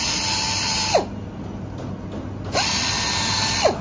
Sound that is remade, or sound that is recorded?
recorded